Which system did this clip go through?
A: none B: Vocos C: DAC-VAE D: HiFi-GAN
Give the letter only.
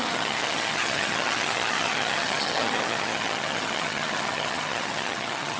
D